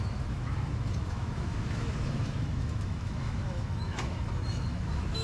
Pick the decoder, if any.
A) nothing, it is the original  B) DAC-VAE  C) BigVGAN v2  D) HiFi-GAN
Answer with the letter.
B